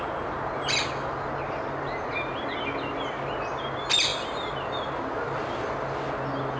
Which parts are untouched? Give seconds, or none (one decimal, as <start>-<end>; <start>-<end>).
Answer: 0.0-6.6